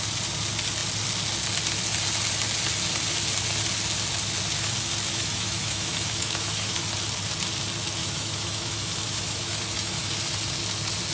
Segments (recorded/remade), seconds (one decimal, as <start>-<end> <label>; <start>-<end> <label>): 0.0-5.1 recorded; 5.1-6.8 remade; 6.8-8.0 recorded; 8.0-10.1 remade; 10.1-11.1 recorded